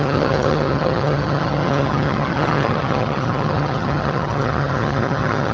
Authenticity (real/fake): fake